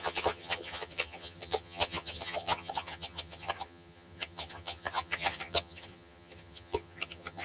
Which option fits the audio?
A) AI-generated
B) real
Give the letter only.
A